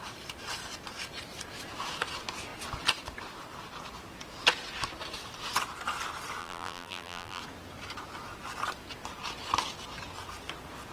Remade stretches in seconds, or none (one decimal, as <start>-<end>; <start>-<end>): 6.4-7.4